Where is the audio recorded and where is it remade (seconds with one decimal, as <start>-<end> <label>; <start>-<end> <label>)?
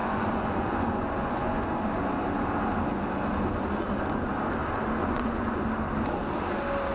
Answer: 0.0-1.6 remade; 1.6-5.0 recorded; 5.0-5.6 remade; 5.6-6.9 recorded